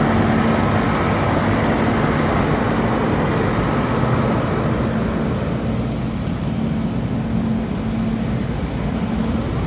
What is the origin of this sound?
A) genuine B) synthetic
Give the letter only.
A